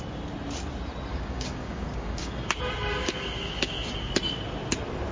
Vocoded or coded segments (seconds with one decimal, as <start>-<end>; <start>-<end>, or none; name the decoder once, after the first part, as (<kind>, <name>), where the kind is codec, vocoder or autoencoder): 1.1-2.5 (codec, DAC); 3.0-4.1